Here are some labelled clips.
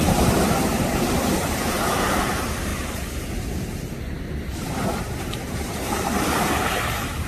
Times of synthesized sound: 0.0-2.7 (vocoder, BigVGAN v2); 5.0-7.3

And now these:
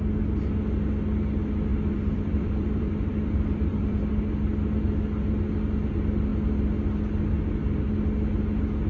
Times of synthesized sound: 1.7-4.1 (vocoder, BigVGAN v2)

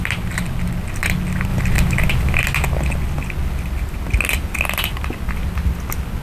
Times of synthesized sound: none

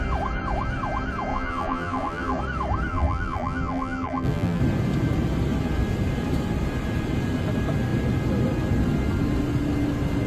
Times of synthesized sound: 1.3-2.4 (vocoder, BigVGAN v2); 2.9-4.6

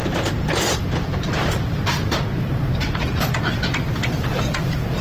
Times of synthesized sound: 0.0-3.0 (vocoder, BigVGAN v2)